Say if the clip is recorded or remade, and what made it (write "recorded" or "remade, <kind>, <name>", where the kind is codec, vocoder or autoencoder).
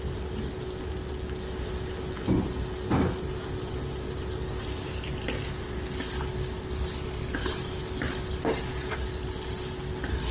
recorded